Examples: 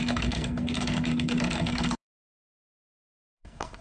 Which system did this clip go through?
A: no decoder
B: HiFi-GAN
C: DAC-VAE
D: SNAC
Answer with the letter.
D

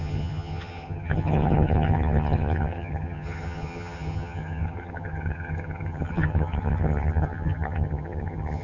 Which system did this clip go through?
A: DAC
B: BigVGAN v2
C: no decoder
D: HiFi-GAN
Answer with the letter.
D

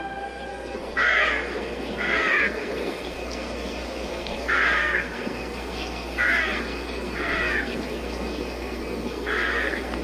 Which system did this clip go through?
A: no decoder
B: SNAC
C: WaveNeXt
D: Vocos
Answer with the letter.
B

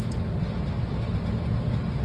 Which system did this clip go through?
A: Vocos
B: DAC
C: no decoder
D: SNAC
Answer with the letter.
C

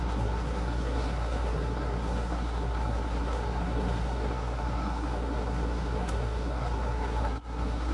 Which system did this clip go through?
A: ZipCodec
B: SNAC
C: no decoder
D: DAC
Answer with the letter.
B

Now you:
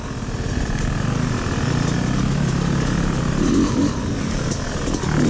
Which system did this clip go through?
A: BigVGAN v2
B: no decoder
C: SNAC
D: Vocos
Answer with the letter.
B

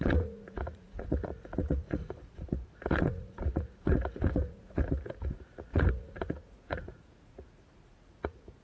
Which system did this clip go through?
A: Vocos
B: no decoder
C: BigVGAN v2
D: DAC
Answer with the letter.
A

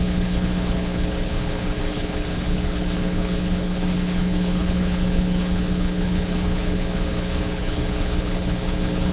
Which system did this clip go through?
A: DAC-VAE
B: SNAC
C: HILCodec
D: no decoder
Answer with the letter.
C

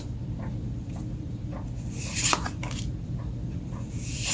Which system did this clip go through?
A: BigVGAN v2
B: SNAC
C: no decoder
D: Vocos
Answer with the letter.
A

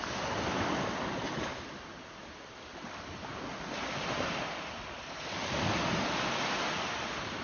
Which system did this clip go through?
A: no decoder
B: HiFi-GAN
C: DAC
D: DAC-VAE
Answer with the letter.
A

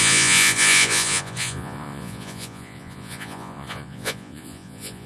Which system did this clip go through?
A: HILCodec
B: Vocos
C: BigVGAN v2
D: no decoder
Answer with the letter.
B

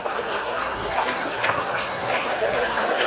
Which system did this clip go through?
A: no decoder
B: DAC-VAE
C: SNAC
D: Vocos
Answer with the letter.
C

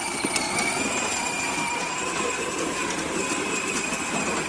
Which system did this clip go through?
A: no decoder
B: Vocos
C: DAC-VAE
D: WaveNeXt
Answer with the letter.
A